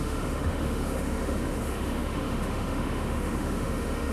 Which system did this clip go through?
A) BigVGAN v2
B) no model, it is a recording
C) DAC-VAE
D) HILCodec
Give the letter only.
C